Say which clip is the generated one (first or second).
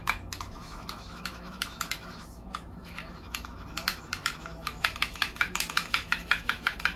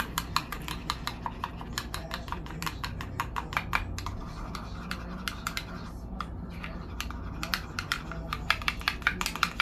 first